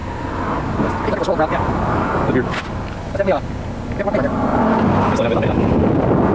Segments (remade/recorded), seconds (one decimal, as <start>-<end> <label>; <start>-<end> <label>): 0.0-6.3 recorded